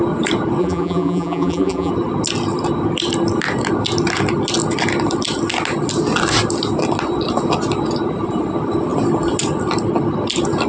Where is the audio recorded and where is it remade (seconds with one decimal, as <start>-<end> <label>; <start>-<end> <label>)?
0.0-0.6 recorded; 0.6-1.9 remade; 1.9-10.7 recorded